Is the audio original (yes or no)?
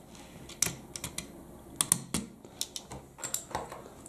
yes